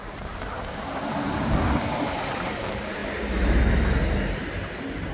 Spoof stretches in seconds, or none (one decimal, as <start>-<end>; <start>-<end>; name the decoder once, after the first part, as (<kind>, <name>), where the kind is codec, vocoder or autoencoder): 0.0-2.6 (vocoder, BigVGAN v2)